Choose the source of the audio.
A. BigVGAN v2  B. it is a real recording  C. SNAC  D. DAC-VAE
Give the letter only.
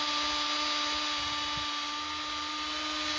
B